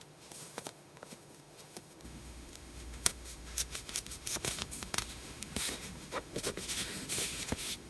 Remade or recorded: remade